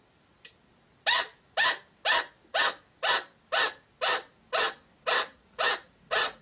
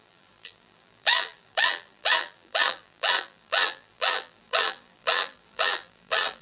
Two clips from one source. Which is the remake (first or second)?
second